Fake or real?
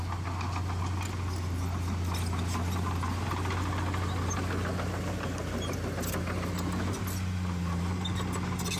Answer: real